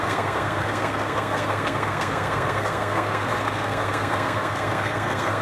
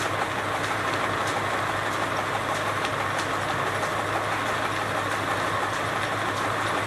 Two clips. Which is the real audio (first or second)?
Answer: second